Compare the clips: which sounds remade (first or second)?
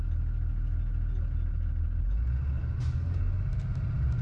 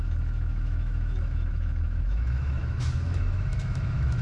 second